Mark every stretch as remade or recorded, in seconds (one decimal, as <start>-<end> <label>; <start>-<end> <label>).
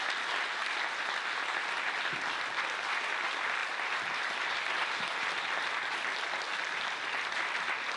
0.0-8.0 recorded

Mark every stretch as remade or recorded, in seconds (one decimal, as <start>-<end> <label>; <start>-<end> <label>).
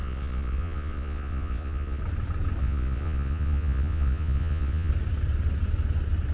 0.0-2.0 remade; 2.0-2.6 recorded; 2.6-4.9 remade; 4.9-6.3 recorded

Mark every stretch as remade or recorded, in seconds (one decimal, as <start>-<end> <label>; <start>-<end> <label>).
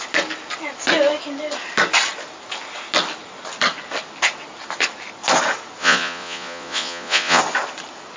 0.0-5.8 recorded; 5.8-7.4 remade; 7.4-8.2 recorded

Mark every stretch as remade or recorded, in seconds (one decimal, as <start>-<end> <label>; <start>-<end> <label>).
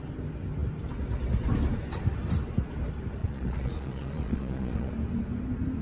0.0-3.2 recorded; 3.2-4.9 remade; 4.9-5.8 recorded